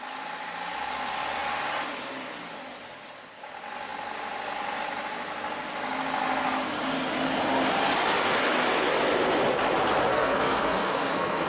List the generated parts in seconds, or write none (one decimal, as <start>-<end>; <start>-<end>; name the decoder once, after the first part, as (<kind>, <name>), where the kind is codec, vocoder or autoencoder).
10.1-11.5 (codec, SNAC)